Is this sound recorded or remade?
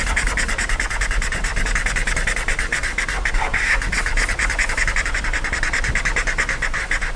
remade